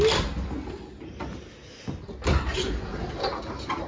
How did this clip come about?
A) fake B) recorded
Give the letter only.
B